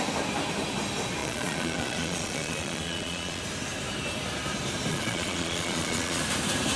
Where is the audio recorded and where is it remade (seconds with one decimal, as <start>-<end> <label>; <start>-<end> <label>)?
0.0-1.2 recorded; 1.2-3.4 remade; 3.4-4.9 recorded; 4.9-6.2 remade; 6.2-6.8 recorded